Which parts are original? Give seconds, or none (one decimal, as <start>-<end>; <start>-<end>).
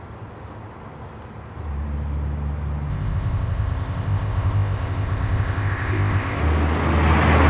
0.0-2.9; 6.4-7.5